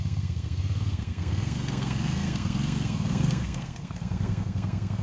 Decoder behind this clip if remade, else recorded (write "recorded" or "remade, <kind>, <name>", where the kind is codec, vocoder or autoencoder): remade, codec, SNAC